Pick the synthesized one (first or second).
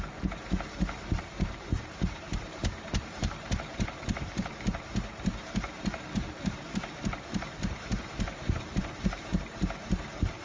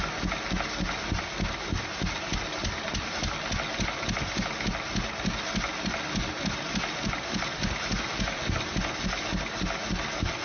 first